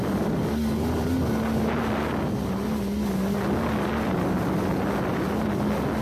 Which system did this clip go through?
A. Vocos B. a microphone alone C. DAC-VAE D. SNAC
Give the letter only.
B